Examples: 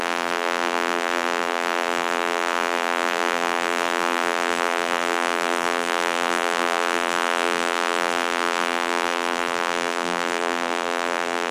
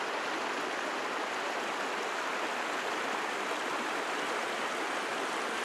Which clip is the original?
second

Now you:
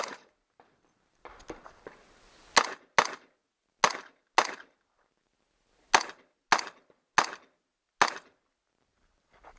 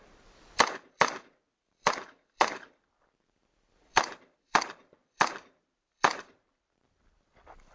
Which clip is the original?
first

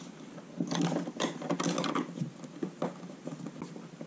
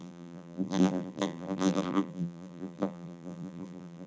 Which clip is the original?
first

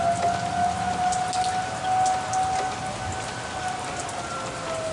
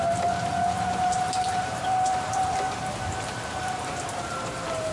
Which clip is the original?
first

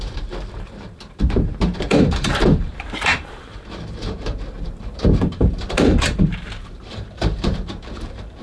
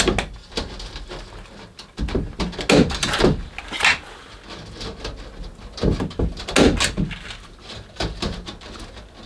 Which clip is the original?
second